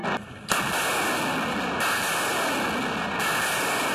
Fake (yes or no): no